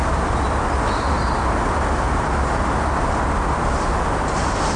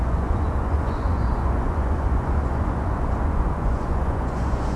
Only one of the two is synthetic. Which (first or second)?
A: second